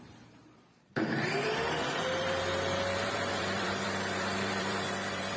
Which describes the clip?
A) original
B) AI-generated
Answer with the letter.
B